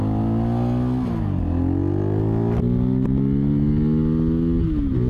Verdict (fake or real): real